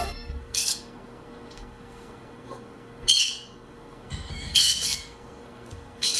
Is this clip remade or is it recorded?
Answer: remade